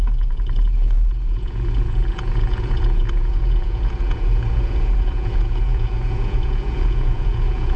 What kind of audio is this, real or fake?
fake